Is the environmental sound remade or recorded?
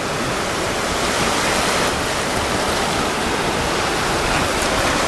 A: recorded